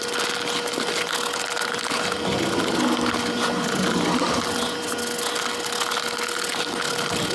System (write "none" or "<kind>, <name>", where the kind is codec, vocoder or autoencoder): none